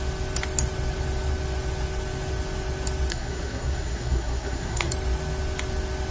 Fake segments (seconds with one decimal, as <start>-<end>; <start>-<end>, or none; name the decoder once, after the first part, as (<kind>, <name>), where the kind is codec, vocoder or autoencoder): 3.1-4.9 (codec, SNAC)